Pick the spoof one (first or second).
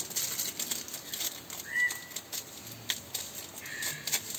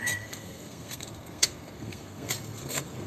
second